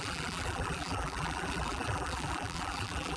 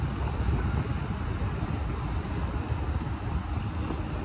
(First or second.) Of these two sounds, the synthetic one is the first